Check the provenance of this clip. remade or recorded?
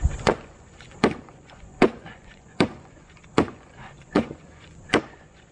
remade